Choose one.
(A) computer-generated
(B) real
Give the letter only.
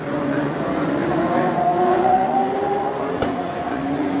A